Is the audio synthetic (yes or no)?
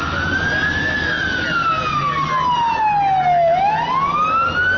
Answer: no